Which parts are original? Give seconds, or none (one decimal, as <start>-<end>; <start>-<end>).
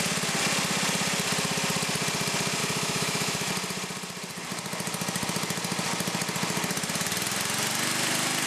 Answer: 0.0-2.6; 3.5-8.5